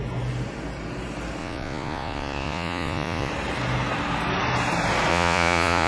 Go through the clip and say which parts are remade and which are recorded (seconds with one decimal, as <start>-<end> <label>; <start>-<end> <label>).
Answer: 0.0-1.4 recorded; 1.4-3.3 remade; 3.3-5.1 recorded; 5.1-5.9 remade

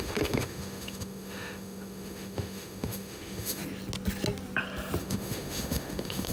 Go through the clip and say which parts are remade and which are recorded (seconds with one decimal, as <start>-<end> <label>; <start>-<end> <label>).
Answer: 0.0-3.6 remade; 3.6-5.0 recorded; 5.0-6.3 remade

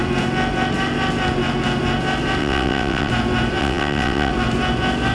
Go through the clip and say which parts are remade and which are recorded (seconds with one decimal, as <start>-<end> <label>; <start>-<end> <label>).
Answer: 0.0-2.4 recorded; 2.4-3.1 remade; 3.1-3.6 recorded; 3.6-4.3 remade; 4.3-5.1 recorded

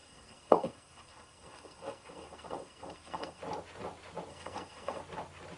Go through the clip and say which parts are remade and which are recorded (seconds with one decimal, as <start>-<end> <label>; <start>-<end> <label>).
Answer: 0.0-3.4 remade; 3.4-4.3 recorded; 4.3-5.0 remade; 5.0-5.6 recorded

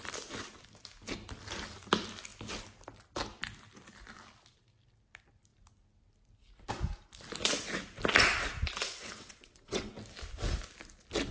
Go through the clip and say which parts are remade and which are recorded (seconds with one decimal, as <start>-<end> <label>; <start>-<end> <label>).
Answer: 0.0-8.8 recorded; 8.8-9.9 remade; 9.9-11.3 recorded